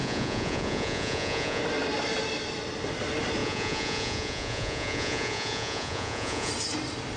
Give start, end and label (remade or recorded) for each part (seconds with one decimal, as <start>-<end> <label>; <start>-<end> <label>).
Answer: 0.0-1.6 remade; 1.6-3.4 recorded; 3.4-6.5 remade; 6.5-7.2 recorded